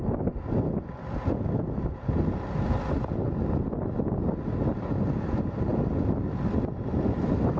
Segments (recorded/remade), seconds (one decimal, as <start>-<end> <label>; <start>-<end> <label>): 0.0-7.6 recorded